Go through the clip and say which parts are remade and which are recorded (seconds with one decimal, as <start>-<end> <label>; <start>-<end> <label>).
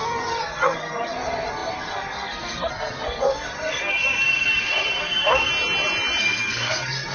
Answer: 0.0-5.5 remade; 5.5-6.2 recorded; 6.2-7.1 remade